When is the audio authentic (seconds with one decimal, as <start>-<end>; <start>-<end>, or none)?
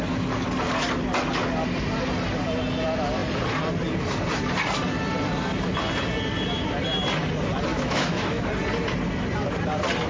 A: 0.0-7.7; 8.5-10.1